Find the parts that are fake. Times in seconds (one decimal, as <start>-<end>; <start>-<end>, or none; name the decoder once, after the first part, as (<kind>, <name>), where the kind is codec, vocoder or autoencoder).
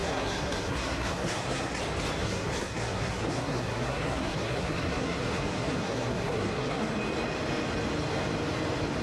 0.0-1.8 (codec, SNAC); 2.2-6.8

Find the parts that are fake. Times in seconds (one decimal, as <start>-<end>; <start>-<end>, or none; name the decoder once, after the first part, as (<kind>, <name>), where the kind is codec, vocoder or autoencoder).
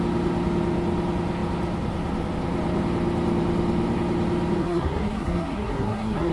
4.6-6.3 (codec, SNAC)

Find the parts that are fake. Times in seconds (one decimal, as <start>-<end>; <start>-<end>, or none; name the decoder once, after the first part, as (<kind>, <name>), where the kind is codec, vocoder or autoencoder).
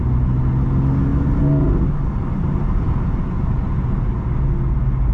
none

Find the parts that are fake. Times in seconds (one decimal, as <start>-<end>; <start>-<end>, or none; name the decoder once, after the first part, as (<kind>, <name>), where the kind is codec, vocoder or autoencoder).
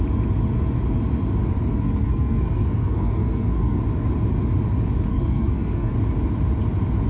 1.7-3.8 (codec, SNAC); 5.1-5.9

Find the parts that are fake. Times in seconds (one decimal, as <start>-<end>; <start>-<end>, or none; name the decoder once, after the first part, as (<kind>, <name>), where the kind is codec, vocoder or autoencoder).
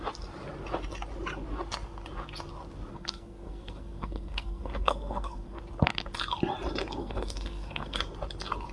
2.9-5.6 (codec, SNAC); 7.0-8.0